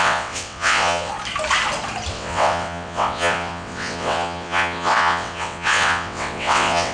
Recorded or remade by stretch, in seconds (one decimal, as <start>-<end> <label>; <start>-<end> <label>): 0.0-1.1 remade; 1.1-2.1 recorded; 2.1-6.9 remade